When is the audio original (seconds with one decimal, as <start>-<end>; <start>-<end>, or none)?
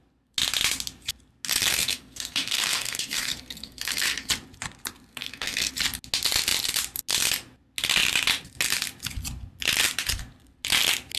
0.0-1.7; 4.3-5.1; 5.7-11.2